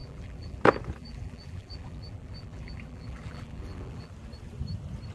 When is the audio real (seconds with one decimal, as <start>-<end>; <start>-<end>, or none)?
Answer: 0.6-1.0; 4.1-5.1